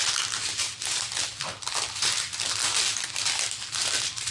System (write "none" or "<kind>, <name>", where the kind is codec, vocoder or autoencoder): none